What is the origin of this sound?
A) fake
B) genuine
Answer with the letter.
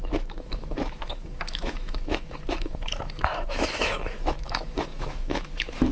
A